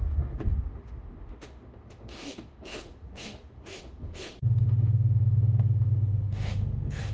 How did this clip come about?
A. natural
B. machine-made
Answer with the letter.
B